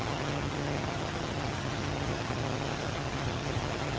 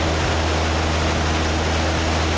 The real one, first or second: second